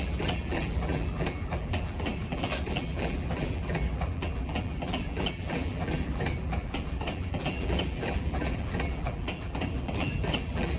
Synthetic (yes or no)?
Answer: yes